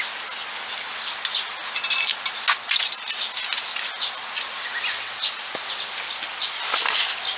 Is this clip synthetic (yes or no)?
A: no